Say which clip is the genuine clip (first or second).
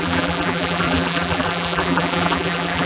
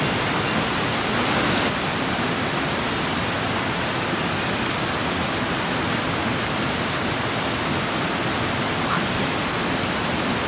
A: second